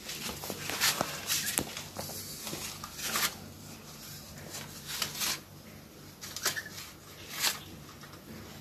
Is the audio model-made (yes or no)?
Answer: no